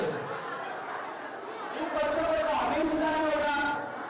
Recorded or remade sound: remade